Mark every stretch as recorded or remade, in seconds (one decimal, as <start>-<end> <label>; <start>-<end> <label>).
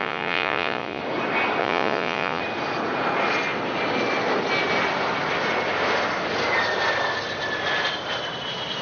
0.0-1.0 remade; 1.0-1.6 recorded; 1.6-2.4 remade; 2.4-8.8 recorded